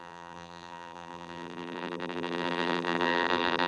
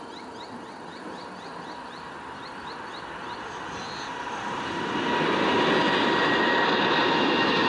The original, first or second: second